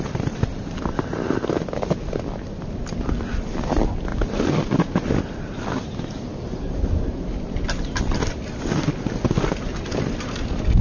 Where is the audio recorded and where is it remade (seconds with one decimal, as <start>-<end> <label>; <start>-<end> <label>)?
0.0-10.8 recorded